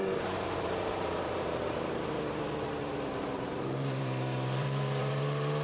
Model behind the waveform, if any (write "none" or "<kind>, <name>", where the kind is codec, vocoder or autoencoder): vocoder, BigVGAN v2